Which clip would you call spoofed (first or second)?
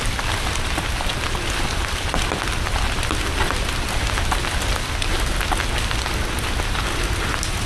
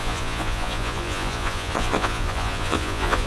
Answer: second